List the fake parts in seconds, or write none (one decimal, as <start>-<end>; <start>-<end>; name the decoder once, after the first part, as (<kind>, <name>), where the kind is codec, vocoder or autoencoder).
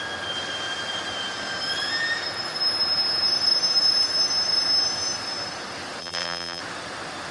6.0-6.6 (vocoder, BigVGAN v2)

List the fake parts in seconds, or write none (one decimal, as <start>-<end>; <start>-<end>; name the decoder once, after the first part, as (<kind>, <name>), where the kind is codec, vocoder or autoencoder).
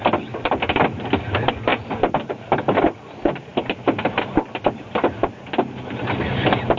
none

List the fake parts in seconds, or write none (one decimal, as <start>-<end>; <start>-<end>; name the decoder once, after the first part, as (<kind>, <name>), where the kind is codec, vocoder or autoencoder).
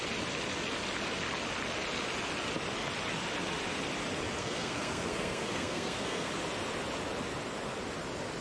4.4-6.3 (codec, SNAC)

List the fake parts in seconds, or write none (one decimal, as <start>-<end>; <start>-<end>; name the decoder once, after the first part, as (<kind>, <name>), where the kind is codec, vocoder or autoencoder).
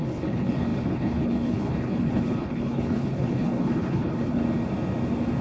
0.0-4.4 (codec, HILCodec)